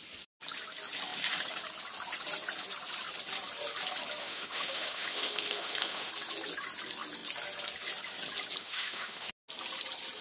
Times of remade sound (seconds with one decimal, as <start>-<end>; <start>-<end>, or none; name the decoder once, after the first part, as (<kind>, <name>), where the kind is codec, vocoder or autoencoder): 4.2-6.1 (autoencoder, DAC-VAE); 8.6-9.3